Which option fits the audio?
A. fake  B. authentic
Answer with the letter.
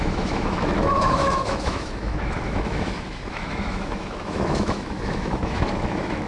A